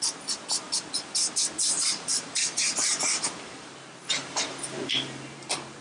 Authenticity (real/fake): fake